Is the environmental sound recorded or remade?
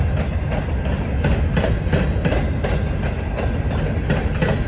recorded